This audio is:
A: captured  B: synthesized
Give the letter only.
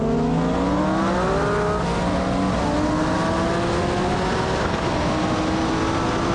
A